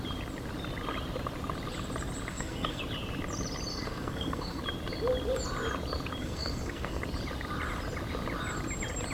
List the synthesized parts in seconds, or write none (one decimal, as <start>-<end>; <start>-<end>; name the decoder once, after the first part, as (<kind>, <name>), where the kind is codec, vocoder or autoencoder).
2.3-2.8 (codec, SNAC); 3.7-4.6; 6.2-7.0